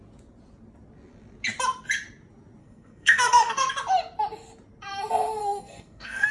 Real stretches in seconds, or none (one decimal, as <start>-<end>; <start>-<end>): 0.0-2.6; 3.7-5.4